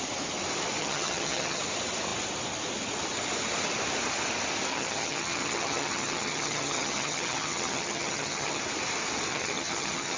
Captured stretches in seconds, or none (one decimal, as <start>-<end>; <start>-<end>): 0.0-0.8; 1.6-4.7; 8.6-9.3